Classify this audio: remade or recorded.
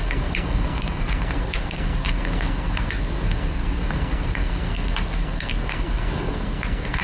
remade